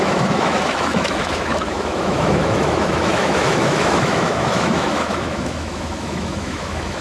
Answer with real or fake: fake